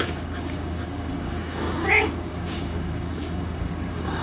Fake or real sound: fake